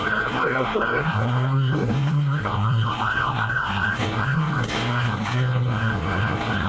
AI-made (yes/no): yes